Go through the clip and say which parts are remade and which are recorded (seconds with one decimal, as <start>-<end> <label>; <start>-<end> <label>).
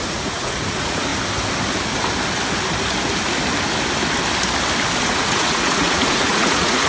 0.0-1.1 remade; 1.1-5.0 recorded; 5.0-6.9 remade